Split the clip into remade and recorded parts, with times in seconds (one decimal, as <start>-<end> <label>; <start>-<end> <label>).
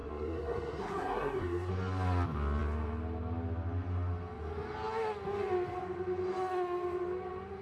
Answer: 0.0-1.7 remade; 1.7-7.6 recorded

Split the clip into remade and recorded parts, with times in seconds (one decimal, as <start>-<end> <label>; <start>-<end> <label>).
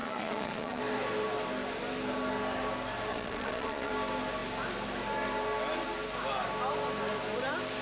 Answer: 0.0-0.8 remade; 0.8-3.1 recorded; 3.1-3.9 remade; 3.9-7.8 recorded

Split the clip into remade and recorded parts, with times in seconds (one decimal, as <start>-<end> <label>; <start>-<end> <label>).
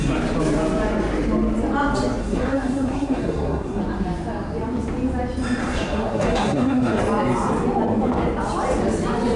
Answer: 0.0-2.2 recorded; 2.2-3.8 remade; 3.8-5.6 recorded; 5.6-7.0 remade; 7.0-9.4 recorded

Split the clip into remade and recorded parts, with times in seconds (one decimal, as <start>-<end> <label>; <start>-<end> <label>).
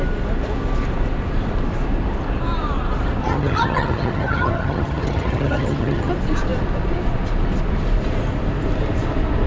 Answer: 0.0-3.2 recorded; 3.2-6.1 remade; 6.1-9.5 recorded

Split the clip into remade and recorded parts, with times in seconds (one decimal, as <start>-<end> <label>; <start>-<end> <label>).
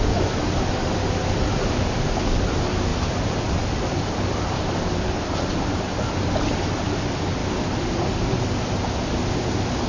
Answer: 0.0-2.9 recorded; 2.9-5.5 remade; 5.5-9.9 recorded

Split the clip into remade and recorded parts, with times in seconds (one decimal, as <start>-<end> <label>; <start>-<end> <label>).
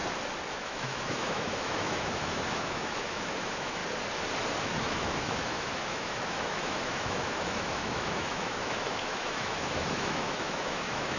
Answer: 0.0-0.5 recorded; 0.5-3.8 remade; 3.8-4.6 recorded; 4.6-11.2 remade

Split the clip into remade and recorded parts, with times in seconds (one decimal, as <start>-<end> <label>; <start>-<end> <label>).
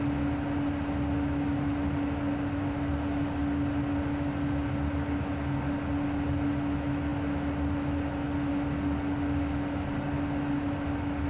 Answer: 0.0-11.3 recorded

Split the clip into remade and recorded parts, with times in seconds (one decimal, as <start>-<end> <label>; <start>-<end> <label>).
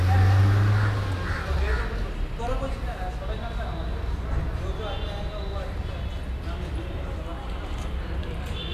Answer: 0.0-8.7 recorded